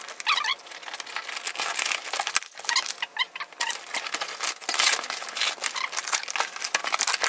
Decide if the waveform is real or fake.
real